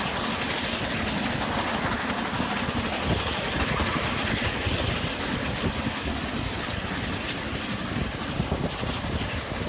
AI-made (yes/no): no